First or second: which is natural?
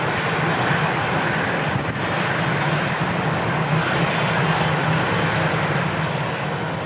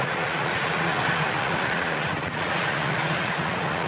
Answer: first